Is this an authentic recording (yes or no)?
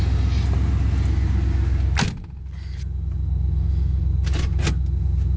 yes